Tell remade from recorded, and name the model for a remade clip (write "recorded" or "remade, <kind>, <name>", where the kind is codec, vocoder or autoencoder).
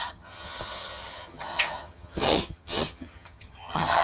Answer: remade, vocoder, HiFi-GAN